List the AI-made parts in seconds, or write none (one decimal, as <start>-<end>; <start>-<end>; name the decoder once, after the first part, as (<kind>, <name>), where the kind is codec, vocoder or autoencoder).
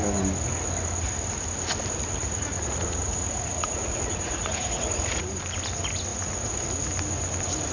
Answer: 2.2-5.3 (vocoder, Vocos); 6.1-6.6